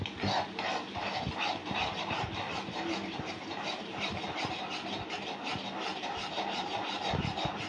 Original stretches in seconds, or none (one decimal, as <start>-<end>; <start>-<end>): 0.0-1.6; 4.6-5.9